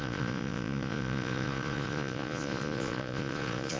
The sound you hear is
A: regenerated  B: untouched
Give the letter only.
A